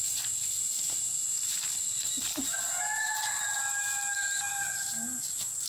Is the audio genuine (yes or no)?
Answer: yes